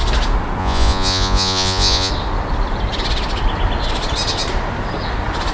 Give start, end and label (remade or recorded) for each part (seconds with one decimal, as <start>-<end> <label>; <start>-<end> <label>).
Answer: 0.0-0.6 recorded; 0.6-2.1 remade; 2.1-5.5 recorded